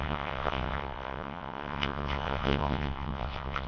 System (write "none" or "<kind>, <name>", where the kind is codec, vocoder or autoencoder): vocoder, WaveNeXt